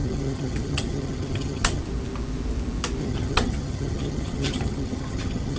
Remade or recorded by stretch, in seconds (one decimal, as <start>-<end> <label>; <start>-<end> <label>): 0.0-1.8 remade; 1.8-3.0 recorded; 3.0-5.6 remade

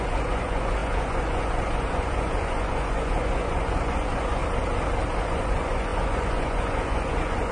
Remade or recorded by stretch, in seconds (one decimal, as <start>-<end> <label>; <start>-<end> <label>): 0.0-4.4 remade; 4.4-5.2 recorded; 5.2-7.5 remade

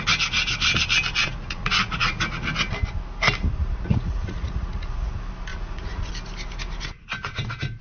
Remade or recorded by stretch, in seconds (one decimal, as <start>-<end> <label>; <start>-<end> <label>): 0.0-1.2 recorded; 1.2-2.2 remade; 2.2-3.6 recorded; 3.6-5.1 remade; 5.1-5.5 recorded; 5.5-6.1 remade; 6.1-7.8 recorded

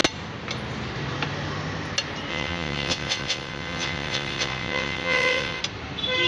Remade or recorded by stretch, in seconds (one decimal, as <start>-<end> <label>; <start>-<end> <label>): 0.0-2.3 recorded; 2.3-5.6 remade; 5.6-6.3 recorded

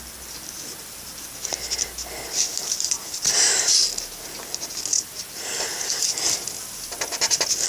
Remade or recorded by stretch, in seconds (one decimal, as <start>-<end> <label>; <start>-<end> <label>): 0.0-7.7 recorded

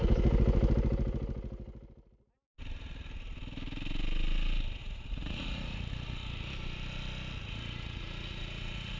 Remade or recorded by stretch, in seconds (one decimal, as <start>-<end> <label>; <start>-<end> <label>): 0.0-4.8 recorded; 4.8-5.9 remade; 5.9-7.4 recorded; 7.4-9.0 remade

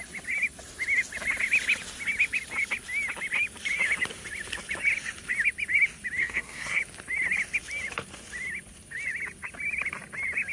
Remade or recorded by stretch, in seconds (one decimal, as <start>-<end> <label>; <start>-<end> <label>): 0.0-6.2 recorded; 6.2-6.8 remade; 6.8-10.5 recorded

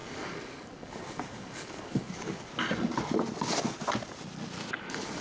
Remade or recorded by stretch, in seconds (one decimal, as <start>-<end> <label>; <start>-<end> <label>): 0.0-2.5 remade; 2.5-4.8 recorded; 4.8-5.2 remade